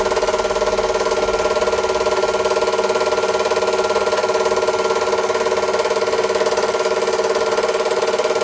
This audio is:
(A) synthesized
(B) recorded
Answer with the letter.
B